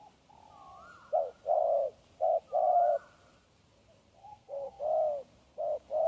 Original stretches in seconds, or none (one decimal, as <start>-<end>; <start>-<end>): 0.0-4.2; 4.8-6.1